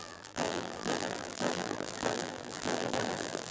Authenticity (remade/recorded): remade